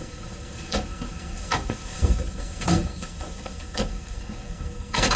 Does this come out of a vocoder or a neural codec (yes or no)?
yes